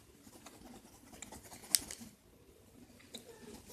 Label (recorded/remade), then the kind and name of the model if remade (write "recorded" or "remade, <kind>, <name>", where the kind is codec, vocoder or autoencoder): recorded